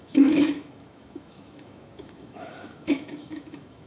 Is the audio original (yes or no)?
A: no